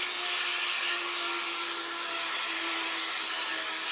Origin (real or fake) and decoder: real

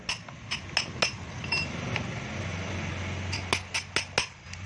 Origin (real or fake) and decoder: real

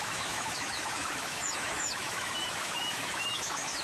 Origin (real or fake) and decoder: fake, autoencoder, DAC-VAE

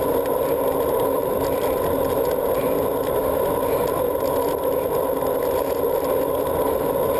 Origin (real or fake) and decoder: real